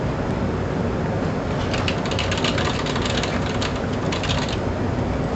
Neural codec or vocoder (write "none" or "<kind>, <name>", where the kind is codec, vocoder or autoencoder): none